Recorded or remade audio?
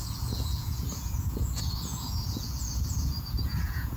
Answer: remade